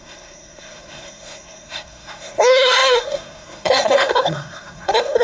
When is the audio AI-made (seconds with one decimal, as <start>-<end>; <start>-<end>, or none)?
0.0-5.2